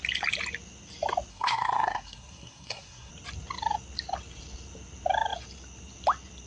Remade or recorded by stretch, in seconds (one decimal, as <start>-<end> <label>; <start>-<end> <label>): 0.0-1.3 recorded; 1.3-3.1 remade; 3.1-6.5 recorded